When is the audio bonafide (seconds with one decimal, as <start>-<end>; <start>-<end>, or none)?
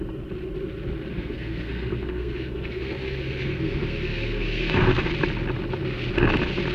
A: 0.0-1.1; 5.1-6.7